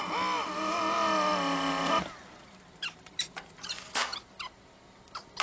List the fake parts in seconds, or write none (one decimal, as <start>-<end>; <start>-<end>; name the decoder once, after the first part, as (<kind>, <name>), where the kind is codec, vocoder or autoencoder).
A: none